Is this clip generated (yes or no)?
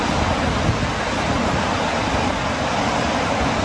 no